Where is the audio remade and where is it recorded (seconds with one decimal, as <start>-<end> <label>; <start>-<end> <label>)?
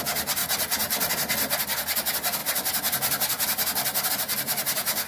0.0-5.1 recorded